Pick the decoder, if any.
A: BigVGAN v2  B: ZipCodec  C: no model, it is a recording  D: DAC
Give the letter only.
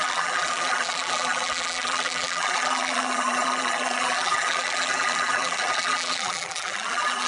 A